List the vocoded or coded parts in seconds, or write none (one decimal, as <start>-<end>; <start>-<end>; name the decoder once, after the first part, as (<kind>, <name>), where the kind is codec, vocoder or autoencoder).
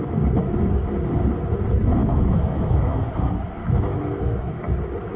2.0-3.0 (autoencoder, DAC-VAE); 3.6-4.6